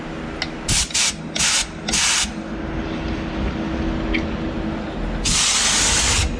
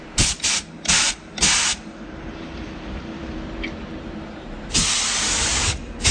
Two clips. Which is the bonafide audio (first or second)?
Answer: first